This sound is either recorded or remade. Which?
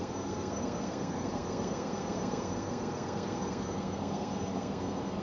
remade